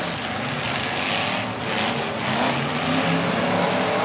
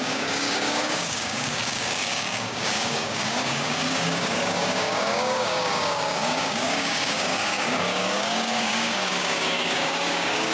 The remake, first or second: second